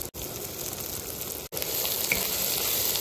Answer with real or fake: real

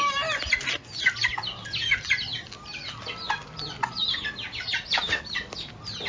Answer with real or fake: real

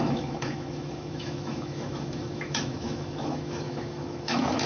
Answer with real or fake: fake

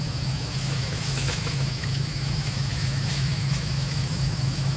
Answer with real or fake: fake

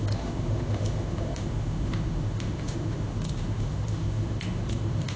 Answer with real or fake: fake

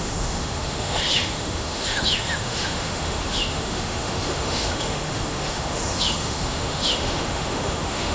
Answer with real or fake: fake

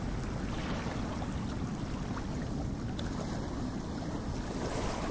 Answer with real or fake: real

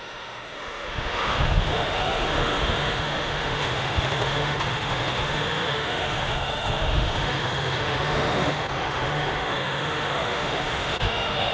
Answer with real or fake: fake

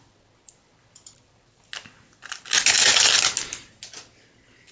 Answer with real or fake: real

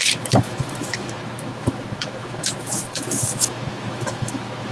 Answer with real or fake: fake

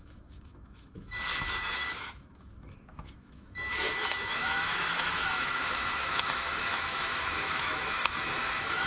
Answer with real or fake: fake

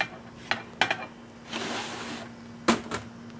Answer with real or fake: real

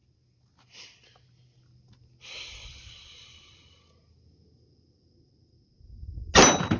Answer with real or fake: real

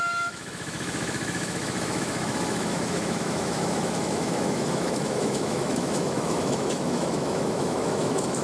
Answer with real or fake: fake